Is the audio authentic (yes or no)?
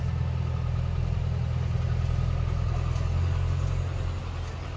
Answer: yes